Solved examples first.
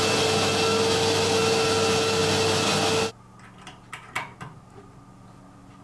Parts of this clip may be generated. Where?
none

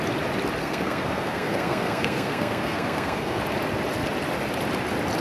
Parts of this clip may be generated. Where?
0.6-3.4 (codec, SNAC)